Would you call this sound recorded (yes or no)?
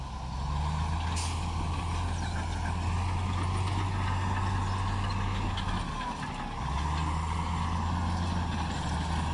yes